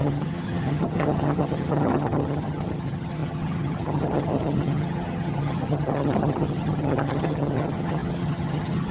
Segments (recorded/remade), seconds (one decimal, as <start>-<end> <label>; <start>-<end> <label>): 0.0-8.9 remade